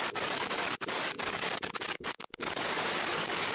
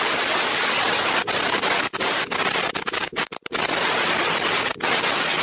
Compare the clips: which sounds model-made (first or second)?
first